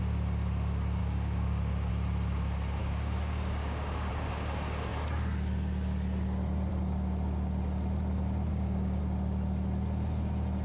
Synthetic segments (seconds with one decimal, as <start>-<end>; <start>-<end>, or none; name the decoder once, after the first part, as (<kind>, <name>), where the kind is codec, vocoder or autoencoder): 1.0-1.9 (codec, DAC); 2.8-4.1; 8.5-9.0